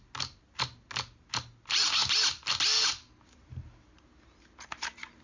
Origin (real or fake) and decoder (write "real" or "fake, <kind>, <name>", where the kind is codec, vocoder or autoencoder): real